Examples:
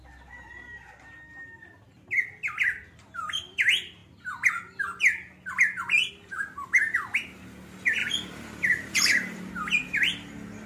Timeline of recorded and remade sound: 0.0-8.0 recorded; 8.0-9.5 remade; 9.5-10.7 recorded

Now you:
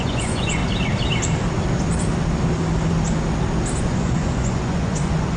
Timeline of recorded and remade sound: 0.0-0.6 remade; 0.6-3.8 recorded; 3.8-5.4 remade

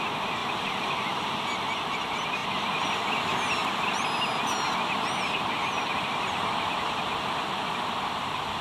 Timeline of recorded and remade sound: 0.0-0.4 recorded; 0.4-1.4 remade; 1.4-8.6 recorded

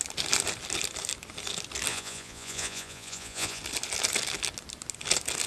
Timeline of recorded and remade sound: 0.0-1.9 recorded; 1.9-3.6 remade; 3.6-5.5 recorded